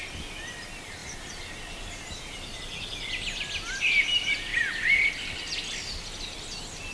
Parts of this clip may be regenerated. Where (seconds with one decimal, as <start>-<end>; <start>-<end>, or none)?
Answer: 1.0-1.5